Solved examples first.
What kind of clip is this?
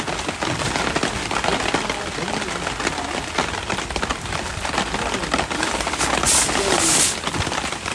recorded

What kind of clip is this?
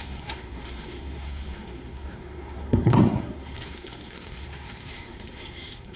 remade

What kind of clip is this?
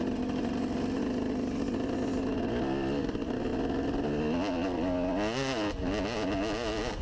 recorded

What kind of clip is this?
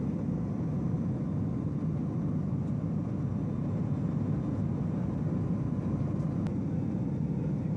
recorded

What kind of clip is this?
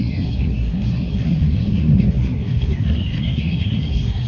remade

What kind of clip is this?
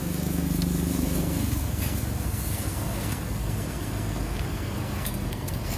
remade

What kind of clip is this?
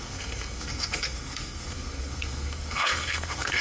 remade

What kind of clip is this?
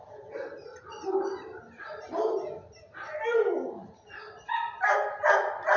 recorded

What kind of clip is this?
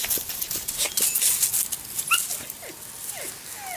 recorded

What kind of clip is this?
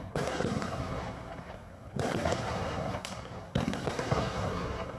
remade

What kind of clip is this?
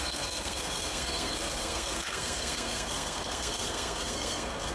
remade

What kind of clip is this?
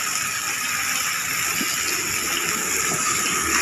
recorded